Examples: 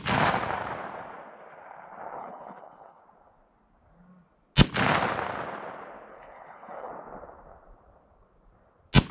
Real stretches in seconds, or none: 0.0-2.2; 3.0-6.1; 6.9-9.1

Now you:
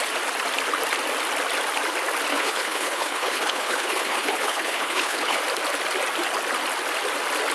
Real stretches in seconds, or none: 0.0-2.3; 5.4-7.5

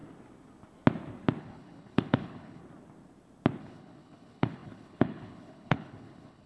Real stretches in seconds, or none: 0.0-1.4; 2.6-3.6

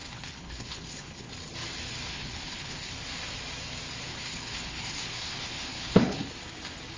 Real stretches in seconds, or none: 1.3-2.1; 2.9-4.1; 6.3-7.0

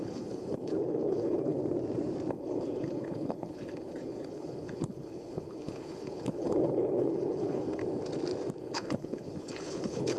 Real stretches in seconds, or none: 1.6-2.3; 7.8-8.6

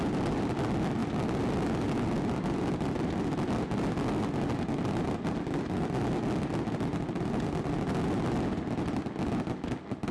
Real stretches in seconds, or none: 0.0-10.1

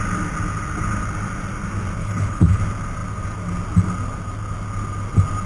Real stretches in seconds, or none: 0.0-2.0; 2.6-5.5

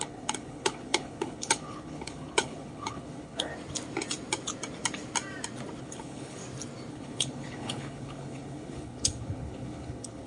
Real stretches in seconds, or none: 3.5-5.8; 6.4-6.9